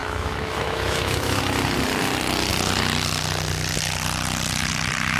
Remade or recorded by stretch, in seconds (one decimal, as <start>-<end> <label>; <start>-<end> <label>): 0.0-1.4 remade; 1.4-5.2 recorded